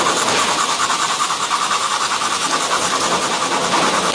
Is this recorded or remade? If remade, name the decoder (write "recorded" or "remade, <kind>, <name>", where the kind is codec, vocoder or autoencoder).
recorded